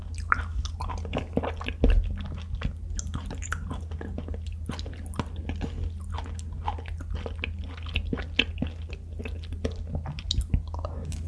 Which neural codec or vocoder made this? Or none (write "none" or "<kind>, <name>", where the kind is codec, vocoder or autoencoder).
none